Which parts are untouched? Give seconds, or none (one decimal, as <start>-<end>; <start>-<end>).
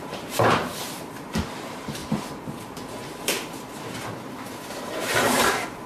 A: 0.7-1.4; 2.0-4.8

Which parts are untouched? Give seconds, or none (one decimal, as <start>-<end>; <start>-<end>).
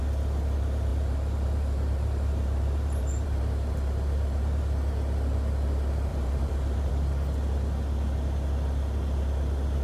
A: 0.0-0.9; 4.6-6.1; 6.9-9.8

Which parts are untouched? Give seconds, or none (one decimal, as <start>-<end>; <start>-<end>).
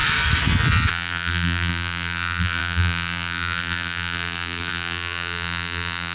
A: 0.0-0.9